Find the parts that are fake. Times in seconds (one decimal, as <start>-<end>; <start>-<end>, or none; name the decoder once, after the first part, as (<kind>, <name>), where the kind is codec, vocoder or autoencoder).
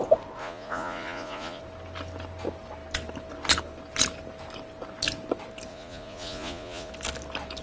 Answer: 0.4-1.6 (vocoder, Vocos); 5.7-6.9